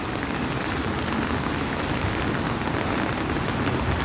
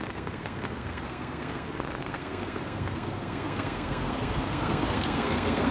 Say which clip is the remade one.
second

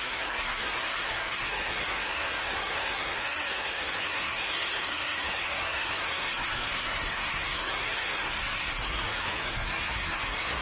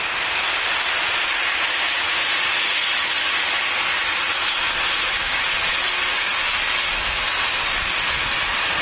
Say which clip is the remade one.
first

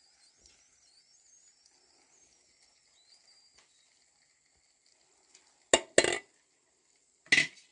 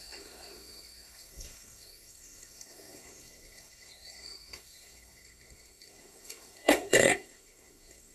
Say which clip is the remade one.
second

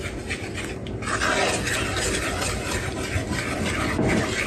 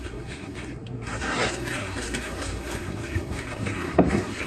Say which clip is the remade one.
second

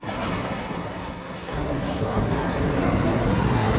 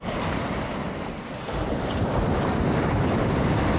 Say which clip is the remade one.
first